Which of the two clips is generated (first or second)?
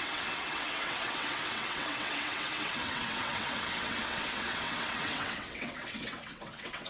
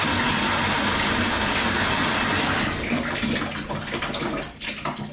first